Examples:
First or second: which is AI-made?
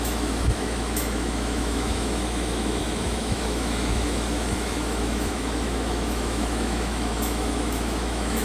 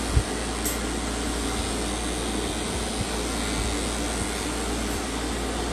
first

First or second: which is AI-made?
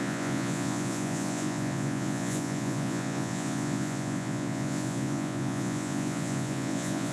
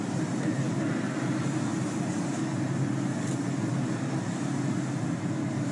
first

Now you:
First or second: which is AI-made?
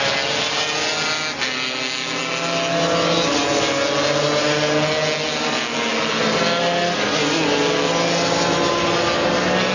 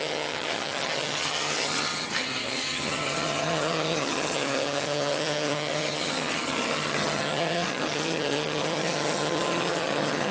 second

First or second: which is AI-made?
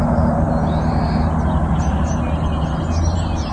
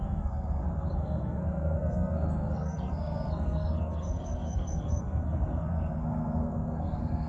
second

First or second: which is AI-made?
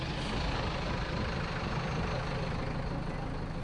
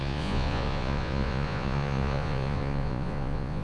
second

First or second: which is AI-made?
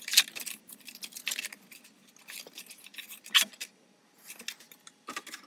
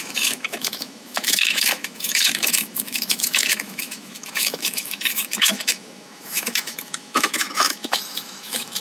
second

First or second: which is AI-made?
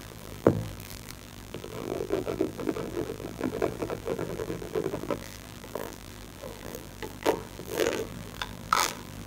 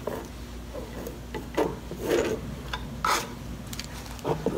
first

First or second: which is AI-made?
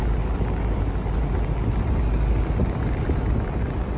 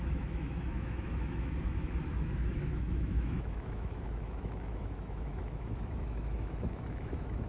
second